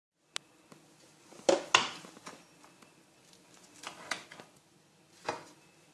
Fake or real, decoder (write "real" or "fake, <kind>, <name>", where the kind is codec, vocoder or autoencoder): real